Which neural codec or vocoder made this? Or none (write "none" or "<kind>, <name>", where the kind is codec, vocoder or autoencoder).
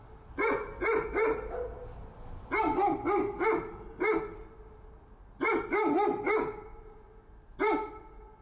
none